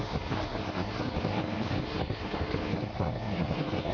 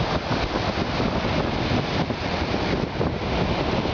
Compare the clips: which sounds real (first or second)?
second